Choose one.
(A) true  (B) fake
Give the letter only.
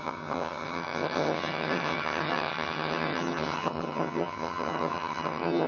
B